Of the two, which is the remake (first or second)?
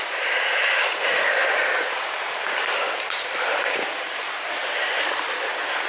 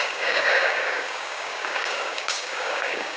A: second